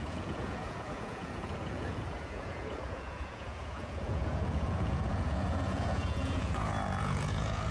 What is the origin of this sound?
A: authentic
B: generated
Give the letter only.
B